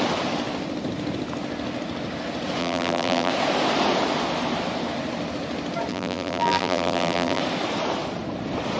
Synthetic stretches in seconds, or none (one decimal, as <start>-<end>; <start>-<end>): 2.6-3.3; 5.9-7.4